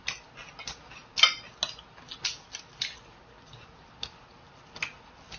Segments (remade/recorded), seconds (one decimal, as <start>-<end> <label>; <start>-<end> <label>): 0.0-5.4 recorded